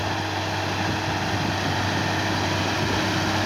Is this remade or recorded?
recorded